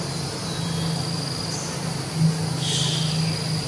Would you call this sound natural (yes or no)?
yes